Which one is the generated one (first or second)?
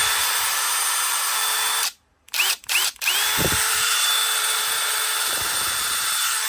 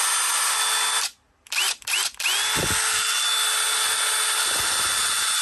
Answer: first